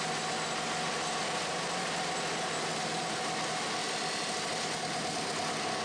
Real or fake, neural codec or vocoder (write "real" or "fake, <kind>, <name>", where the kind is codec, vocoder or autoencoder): real